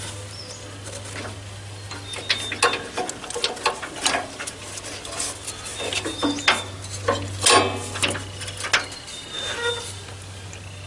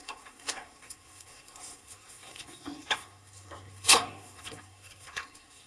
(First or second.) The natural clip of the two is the first